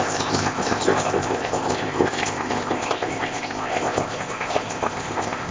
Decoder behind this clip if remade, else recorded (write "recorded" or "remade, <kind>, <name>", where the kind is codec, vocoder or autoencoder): remade, codec, ZipCodec